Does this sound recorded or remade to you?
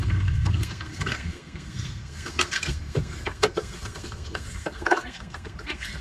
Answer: remade